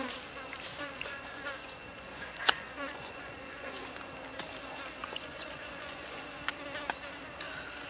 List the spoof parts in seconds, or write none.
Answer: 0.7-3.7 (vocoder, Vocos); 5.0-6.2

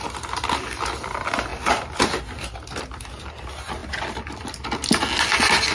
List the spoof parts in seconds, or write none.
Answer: none

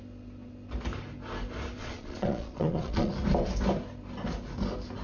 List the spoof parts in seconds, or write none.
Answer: 1.8-3.1 (vocoder, Vocos)